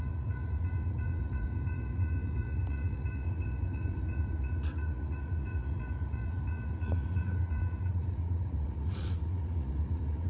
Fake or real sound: fake